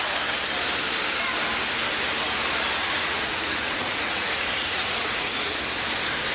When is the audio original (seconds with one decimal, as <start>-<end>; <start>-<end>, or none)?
0.0-2.8; 5.5-6.3